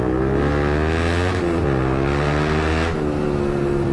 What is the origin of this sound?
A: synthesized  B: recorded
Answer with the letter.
B